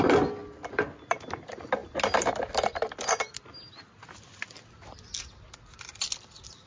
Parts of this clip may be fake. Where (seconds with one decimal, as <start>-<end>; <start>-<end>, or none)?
none